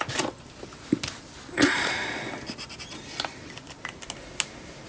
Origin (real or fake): real